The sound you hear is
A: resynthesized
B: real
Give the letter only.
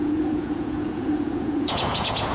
A